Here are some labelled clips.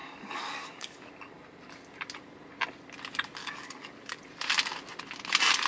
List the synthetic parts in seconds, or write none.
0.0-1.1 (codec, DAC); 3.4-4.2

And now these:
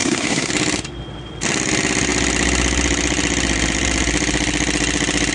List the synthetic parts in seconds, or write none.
0.0-0.5 (codec, SNAC)

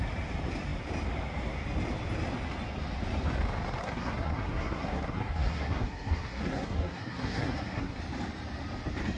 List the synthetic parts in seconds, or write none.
3.8-8.0 (codec, SNAC)

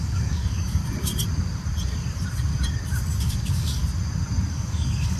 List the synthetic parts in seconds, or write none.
0.0-0.8 (codec, DAC); 3.2-3.8; 4.5-5.2

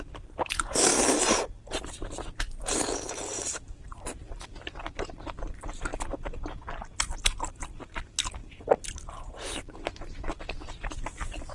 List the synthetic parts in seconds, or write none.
0.0-0.9 (vocoder, BigVGAN v2); 1.8-5.9; 7.8-11.5

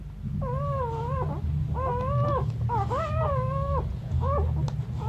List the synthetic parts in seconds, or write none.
3.9-4.4 (vocoder, Vocos)

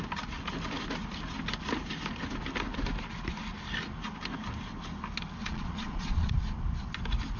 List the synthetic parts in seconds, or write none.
5.4-6.3 (vocoder, Vocos)

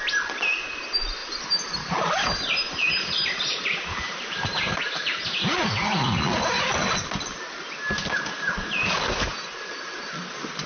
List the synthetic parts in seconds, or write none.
1.2-4.8 (vocoder, BigVGAN v2)